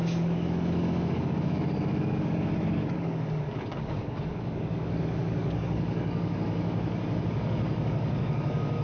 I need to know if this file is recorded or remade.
remade